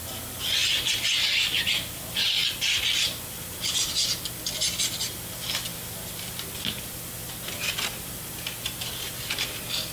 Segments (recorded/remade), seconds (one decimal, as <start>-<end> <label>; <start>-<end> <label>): 0.0-9.9 recorded